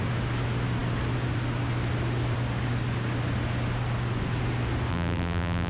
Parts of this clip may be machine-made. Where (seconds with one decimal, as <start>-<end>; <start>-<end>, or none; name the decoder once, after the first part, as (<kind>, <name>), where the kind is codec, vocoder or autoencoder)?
4.9-5.7 (vocoder, BigVGAN v2)